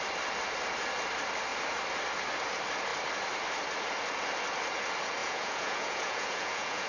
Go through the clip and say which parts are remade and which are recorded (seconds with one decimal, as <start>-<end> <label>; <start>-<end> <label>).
0.0-5.2 recorded; 5.2-6.9 remade